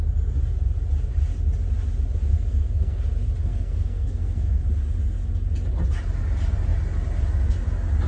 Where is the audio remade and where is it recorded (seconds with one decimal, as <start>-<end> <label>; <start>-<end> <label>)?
0.0-2.3 recorded; 2.3-3.0 remade; 3.0-3.4 recorded; 3.4-4.6 remade; 4.6-8.1 recorded